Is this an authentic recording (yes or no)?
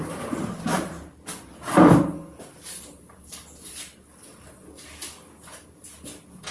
yes